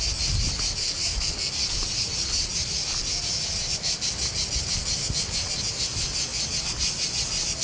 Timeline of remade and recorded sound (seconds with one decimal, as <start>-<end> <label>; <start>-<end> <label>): 0.0-0.8 recorded; 0.8-1.5 remade; 1.5-7.6 recorded